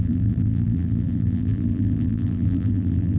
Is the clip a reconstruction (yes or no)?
yes